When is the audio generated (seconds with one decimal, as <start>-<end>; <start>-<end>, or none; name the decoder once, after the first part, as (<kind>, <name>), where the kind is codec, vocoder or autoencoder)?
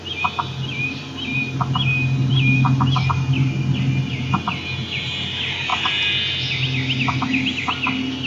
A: none